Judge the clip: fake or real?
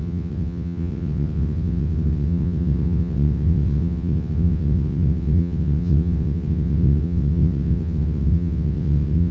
fake